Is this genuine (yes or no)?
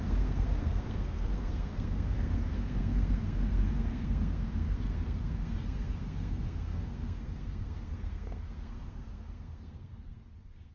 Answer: no